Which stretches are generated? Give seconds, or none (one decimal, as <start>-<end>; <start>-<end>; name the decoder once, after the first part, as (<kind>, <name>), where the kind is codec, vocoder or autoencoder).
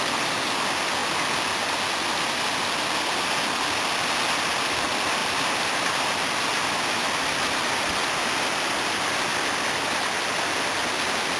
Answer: 5.2-8.1 (vocoder, BigVGAN v2); 9.3-10.0